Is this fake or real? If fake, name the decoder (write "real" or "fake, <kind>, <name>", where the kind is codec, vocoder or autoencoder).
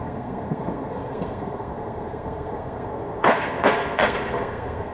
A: fake, codec, SNAC